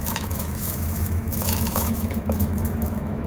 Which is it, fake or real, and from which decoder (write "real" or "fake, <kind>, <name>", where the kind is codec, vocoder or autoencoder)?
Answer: fake, autoencoder, DAC-VAE